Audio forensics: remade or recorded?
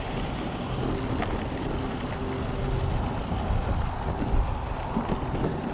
recorded